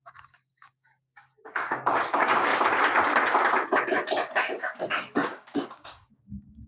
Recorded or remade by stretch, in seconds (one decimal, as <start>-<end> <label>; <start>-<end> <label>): 0.0-2.5 remade; 2.5-4.6 recorded; 4.6-6.7 remade